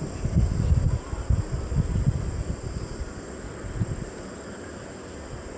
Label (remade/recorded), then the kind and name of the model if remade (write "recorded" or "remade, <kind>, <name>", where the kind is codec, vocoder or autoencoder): recorded